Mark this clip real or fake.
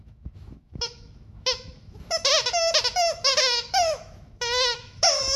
fake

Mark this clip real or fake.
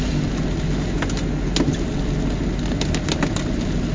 real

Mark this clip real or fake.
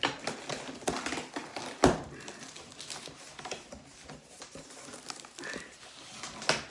real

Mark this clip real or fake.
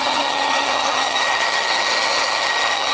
fake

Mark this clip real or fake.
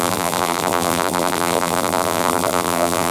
fake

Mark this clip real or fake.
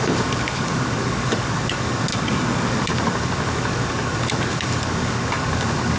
fake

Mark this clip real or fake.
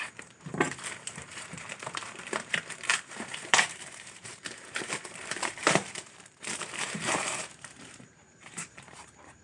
fake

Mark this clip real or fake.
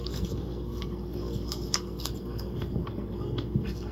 fake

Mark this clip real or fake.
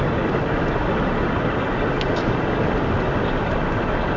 real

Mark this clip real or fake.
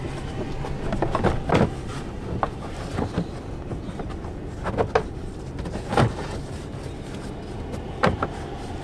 real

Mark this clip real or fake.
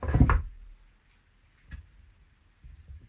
real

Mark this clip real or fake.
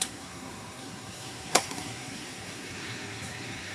fake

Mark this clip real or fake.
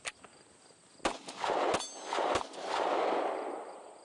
real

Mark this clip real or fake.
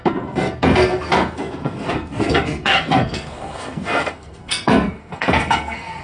fake